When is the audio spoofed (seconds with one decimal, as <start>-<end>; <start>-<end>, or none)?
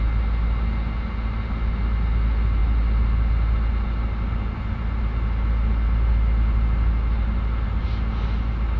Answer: none